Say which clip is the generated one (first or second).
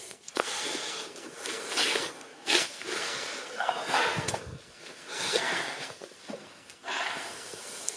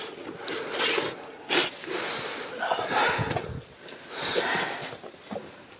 first